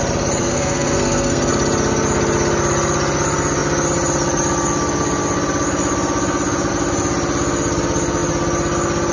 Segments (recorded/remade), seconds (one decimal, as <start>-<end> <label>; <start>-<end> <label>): 0.0-0.4 recorded; 0.4-1.5 remade; 1.5-9.1 recorded